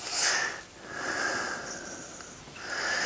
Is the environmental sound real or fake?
real